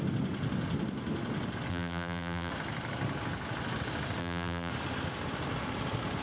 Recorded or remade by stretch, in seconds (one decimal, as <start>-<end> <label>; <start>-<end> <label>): 0.0-1.7 recorded; 1.7-2.5 remade; 2.5-4.2 recorded; 4.2-4.7 remade; 4.7-6.2 recorded